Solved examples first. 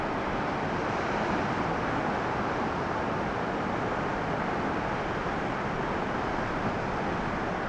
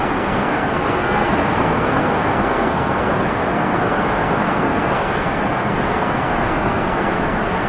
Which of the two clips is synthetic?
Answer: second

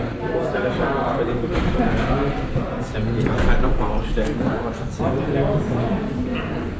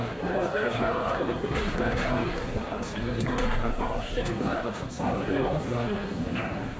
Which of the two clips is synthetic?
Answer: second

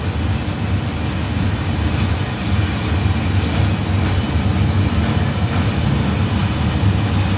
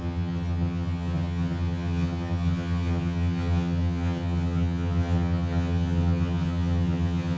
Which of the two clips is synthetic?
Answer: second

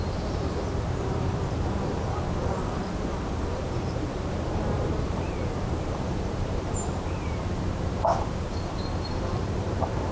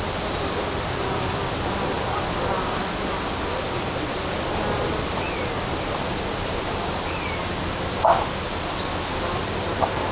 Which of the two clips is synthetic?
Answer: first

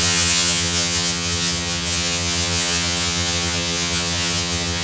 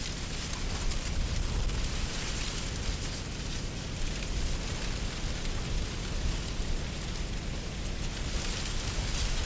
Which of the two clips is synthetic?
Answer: first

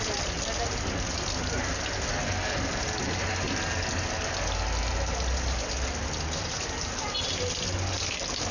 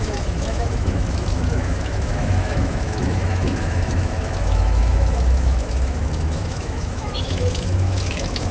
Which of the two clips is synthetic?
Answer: second